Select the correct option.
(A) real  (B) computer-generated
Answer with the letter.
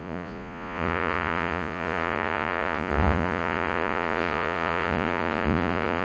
B